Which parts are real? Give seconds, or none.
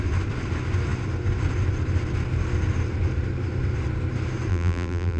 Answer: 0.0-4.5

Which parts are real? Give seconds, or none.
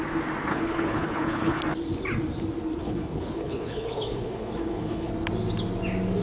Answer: 0.0-0.5; 1.6-2.8; 5.1-6.2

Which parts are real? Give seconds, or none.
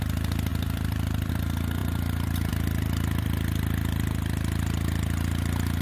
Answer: 0.0-0.5; 1.3-5.8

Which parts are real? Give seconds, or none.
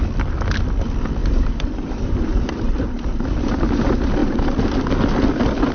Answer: 0.0-1.2; 3.6-4.2; 4.8-5.7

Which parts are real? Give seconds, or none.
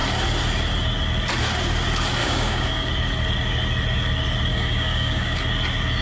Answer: 0.0-2.2; 2.9-4.5; 5.4-6.0